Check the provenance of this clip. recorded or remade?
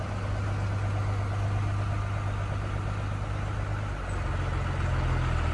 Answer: recorded